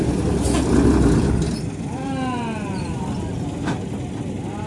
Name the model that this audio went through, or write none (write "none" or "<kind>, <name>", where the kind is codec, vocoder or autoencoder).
none